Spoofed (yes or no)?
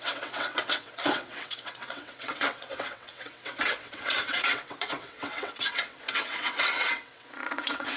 yes